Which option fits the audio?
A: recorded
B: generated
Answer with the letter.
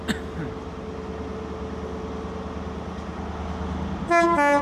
A